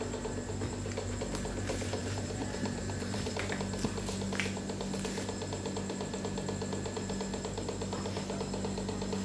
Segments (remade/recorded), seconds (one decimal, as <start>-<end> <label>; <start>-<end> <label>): 0.0-2.0 recorded; 2.0-3.3 remade; 3.3-9.2 recorded